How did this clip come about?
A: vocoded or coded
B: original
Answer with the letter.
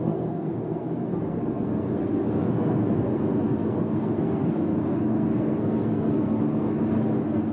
A